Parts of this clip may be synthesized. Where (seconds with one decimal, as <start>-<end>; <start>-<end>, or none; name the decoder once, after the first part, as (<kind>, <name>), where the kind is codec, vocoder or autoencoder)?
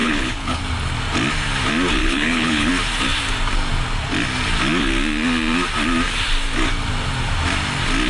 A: 0.0-0.6 (codec, HILCodec); 2.0-2.7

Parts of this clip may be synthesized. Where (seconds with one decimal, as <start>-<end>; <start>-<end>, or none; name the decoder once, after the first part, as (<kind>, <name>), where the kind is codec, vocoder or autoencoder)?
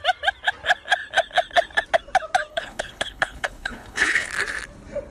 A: 2.5-4.3 (codec, HILCodec)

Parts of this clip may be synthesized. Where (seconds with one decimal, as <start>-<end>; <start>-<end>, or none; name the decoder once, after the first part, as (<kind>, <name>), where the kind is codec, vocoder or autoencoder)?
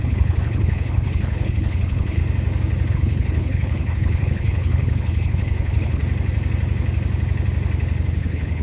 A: 0.0-2.2 (codec, HILCodec); 2.9-6.0; 8.2-8.6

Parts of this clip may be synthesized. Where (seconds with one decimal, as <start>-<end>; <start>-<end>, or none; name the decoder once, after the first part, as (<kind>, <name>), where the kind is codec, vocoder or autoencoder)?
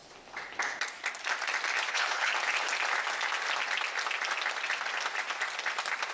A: 1.9-2.3 (codec, HILCodec)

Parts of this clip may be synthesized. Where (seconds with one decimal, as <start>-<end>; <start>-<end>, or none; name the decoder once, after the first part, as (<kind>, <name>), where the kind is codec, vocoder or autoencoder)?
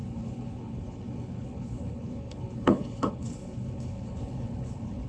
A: 0.0-5.1 (codec, HILCodec)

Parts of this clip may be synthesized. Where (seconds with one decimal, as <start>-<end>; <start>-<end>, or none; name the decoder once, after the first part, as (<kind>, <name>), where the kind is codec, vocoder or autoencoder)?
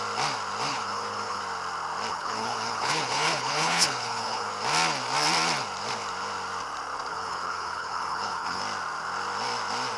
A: 0.7-1.4 (codec, HILCodec); 2.1-4.5; 7.1-8.6